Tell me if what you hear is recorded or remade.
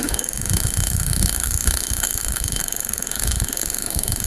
remade